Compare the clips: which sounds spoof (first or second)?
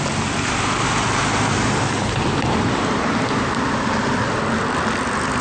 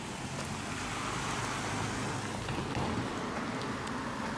first